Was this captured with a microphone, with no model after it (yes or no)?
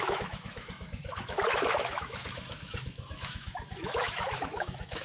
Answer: no